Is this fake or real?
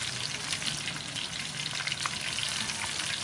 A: real